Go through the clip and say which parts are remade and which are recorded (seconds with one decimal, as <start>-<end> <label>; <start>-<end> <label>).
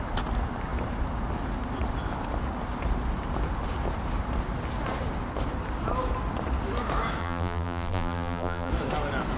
0.0-7.2 recorded; 7.2-8.7 remade; 8.7-9.4 recorded